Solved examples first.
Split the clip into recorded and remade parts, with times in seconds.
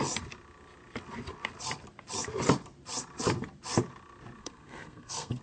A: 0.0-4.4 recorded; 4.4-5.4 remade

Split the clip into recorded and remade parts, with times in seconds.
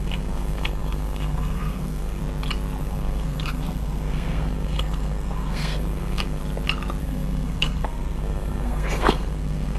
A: 0.0-2.2 remade; 2.2-2.8 recorded; 2.8-6.4 remade; 6.4-7.0 recorded; 7.0-9.8 remade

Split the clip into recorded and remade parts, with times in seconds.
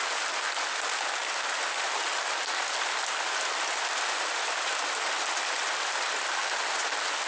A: 0.0-7.3 recorded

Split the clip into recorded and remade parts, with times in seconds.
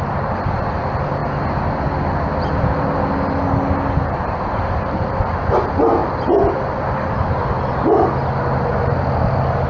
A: 0.0-9.7 recorded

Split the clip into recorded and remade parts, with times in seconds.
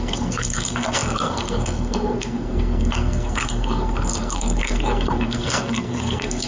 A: 0.0-6.5 remade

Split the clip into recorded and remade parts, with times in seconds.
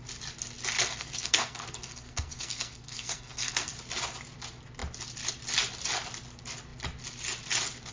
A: 0.0-0.8 recorded; 0.8-3.7 remade; 3.7-7.9 recorded